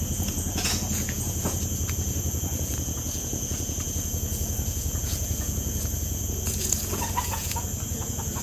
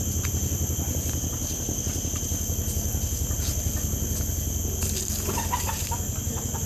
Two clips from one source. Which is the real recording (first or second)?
second